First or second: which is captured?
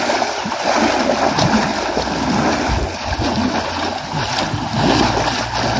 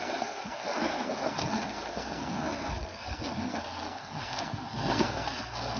first